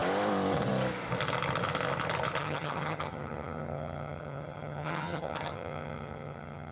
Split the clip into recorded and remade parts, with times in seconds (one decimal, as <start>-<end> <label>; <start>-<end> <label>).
0.0-2.4 recorded; 2.4-6.7 remade